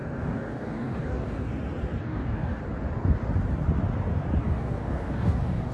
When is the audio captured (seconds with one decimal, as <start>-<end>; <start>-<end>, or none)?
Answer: 1.5-2.0; 2.6-4.4